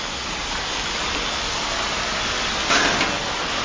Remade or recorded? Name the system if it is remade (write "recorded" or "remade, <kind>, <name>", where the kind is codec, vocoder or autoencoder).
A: recorded